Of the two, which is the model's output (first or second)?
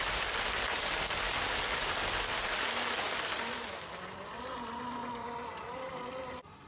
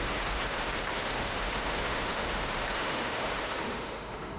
second